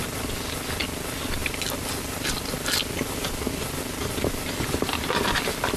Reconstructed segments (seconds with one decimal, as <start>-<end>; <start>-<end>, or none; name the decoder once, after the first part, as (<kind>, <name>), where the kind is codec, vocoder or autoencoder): 2.8-5.8 (vocoder, BigVGAN v2)